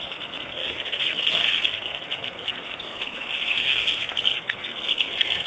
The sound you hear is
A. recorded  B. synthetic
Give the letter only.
B